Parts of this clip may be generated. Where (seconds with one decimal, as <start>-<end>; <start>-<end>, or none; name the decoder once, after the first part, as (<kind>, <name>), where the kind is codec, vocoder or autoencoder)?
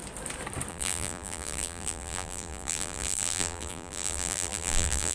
0.7-5.1 (vocoder, BigVGAN v2)